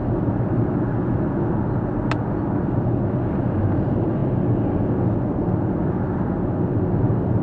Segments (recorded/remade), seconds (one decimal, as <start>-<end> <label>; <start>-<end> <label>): 0.0-7.4 recorded